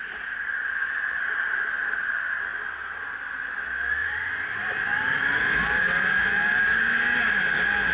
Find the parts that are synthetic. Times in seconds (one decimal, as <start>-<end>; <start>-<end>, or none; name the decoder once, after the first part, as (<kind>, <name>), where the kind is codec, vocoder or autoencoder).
4.0-6.8 (vocoder, BigVGAN v2)